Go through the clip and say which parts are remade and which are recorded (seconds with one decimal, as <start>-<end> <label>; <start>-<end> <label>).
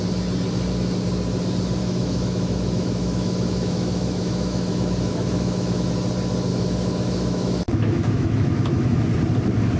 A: 0.0-1.8 recorded; 1.8-5.9 remade; 5.9-6.5 recorded; 6.5-9.0 remade; 9.0-9.8 recorded